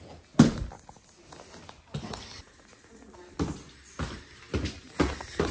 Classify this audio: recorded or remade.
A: recorded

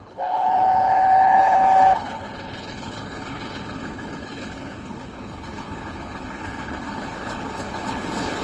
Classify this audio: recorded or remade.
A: remade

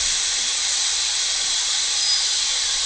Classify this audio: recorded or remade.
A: recorded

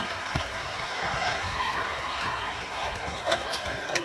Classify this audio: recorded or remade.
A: remade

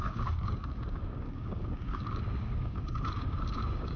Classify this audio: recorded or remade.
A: remade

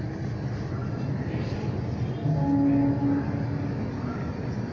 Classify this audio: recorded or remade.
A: recorded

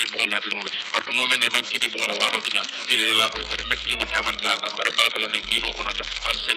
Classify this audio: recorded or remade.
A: remade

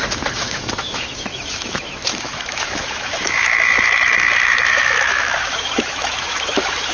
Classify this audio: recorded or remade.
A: remade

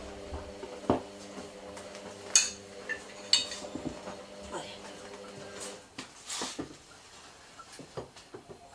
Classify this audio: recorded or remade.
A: recorded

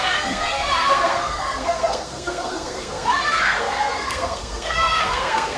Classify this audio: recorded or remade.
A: remade